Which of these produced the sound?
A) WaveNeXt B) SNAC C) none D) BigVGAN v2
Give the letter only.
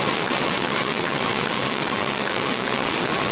A